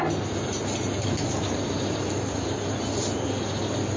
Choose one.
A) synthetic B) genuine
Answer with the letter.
B